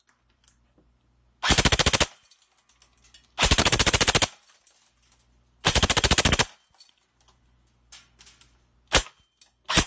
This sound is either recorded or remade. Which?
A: recorded